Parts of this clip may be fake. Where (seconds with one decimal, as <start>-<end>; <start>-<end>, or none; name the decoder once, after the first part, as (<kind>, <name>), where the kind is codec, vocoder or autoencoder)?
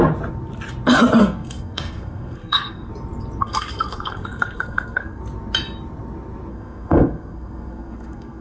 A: 1.2-2.9 (codec, SNAC); 3.4-5.2; 6.5-8.4